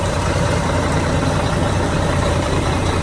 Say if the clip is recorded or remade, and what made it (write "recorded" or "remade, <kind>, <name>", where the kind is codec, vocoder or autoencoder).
remade, vocoder, BigVGAN v2